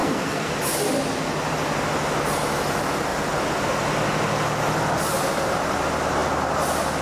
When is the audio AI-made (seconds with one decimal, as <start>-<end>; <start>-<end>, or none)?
0.0-0.5